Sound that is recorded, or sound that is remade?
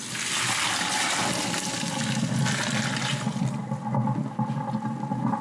recorded